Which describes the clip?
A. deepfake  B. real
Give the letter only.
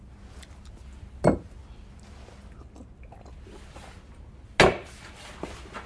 B